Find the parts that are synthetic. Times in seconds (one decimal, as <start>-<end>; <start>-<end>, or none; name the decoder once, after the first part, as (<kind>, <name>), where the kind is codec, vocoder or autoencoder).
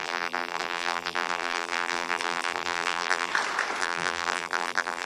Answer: 0.0-3.3 (vocoder, BigVGAN v2); 3.8-5.1